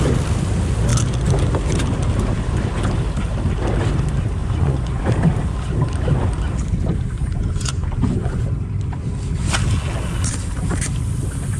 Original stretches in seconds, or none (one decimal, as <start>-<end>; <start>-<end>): 0.0-4.4; 5.1-7.2; 8.4-11.6